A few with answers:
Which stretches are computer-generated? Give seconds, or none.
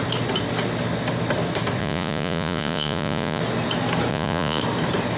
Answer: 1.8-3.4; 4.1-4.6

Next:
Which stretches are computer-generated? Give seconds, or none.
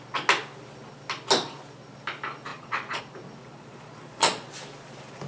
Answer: 2.5-3.0; 3.4-4.5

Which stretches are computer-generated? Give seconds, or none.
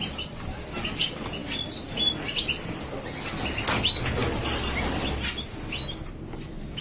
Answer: none